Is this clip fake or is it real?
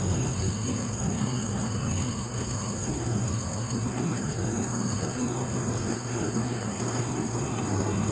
fake